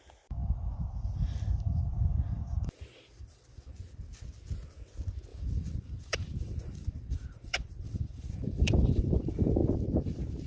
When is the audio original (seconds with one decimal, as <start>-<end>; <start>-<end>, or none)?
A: 0.0-0.4; 3.6-5.3; 9.2-10.5